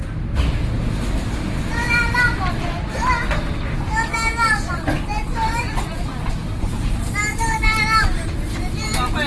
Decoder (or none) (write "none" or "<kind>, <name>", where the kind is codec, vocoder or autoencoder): none